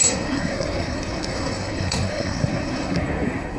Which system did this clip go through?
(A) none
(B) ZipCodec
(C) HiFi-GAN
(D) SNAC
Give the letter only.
D